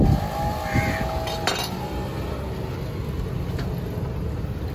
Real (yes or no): yes